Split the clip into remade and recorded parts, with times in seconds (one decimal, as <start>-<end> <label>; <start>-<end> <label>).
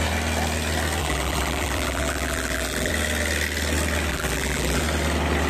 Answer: 0.0-1.0 recorded; 1.0-2.9 remade; 2.9-4.1 recorded; 4.1-4.8 remade; 4.8-5.5 recorded